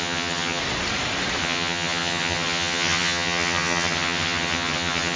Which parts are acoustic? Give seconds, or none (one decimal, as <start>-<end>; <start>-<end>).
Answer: 0.6-1.4